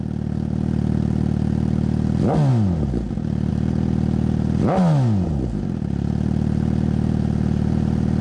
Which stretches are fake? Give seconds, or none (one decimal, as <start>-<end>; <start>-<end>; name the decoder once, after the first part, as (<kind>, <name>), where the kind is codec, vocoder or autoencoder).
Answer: none